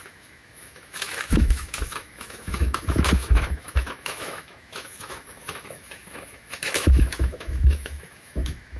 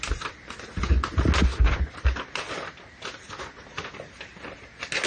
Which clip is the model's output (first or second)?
first